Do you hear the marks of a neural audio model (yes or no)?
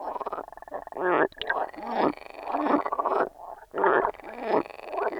no